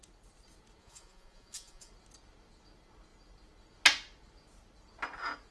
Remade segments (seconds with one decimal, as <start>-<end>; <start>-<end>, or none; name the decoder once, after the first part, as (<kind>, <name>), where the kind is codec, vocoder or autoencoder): 0.8-1.9 (vocoder, Vocos)